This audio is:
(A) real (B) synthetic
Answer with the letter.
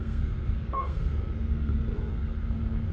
B